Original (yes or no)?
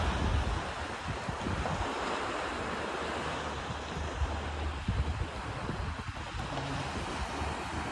yes